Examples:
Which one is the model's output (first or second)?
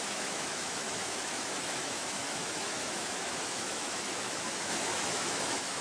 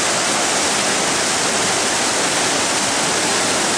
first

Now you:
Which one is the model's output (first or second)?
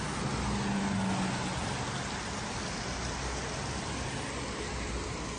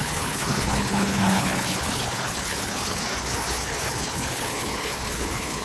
second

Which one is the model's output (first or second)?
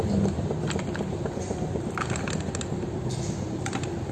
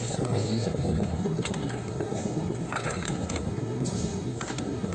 second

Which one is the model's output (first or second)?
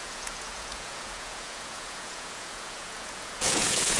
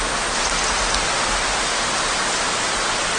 first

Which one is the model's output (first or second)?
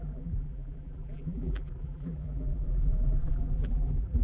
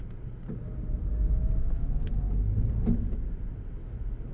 first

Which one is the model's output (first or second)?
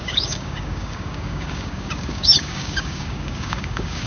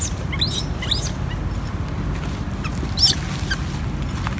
first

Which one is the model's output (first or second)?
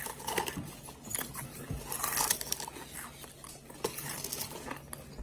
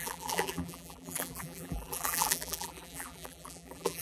second